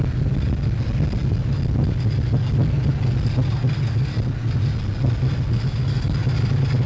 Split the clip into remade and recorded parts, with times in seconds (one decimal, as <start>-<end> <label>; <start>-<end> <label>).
0.0-6.9 recorded